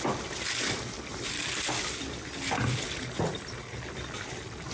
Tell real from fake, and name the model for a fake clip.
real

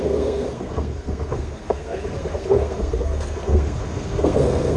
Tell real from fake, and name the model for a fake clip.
fake, codec, SNAC